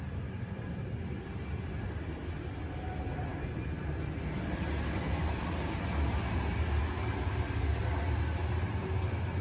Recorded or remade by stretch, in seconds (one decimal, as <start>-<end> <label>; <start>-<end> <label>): 0.0-9.4 recorded